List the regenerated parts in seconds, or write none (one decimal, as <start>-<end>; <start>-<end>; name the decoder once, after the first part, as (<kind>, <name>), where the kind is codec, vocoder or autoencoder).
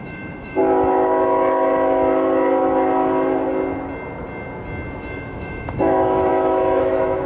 0.0-0.6 (autoencoder, DAC-VAE); 5.0-7.3